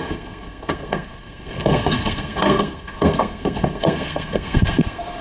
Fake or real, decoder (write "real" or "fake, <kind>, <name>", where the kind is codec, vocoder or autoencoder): fake, codec, SNAC